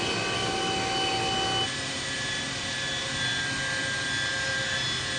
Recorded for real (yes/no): yes